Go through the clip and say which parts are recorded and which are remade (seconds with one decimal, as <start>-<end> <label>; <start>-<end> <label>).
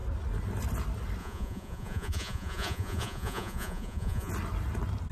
0.0-1.2 recorded; 1.2-4.3 remade; 4.3-5.1 recorded